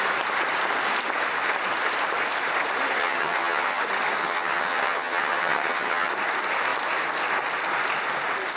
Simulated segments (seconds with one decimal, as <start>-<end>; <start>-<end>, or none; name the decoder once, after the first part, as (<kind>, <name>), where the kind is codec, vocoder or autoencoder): 3.0-3.8 (vocoder, HiFi-GAN); 4.2-6.1